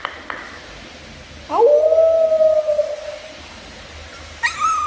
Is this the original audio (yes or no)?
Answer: yes